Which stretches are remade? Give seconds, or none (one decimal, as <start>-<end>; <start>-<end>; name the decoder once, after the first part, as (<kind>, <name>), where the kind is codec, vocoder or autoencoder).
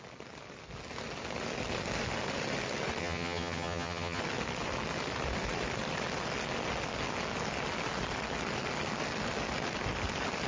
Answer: 3.0-4.2 (vocoder, HiFi-GAN)